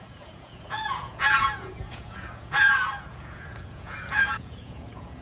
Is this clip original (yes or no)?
no